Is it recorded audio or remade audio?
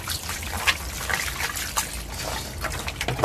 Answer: recorded